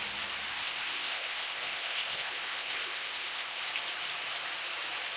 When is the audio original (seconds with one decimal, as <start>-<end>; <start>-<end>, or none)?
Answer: 0.0-0.5; 3.6-5.2